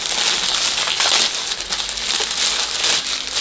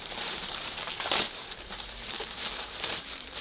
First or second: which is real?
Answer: first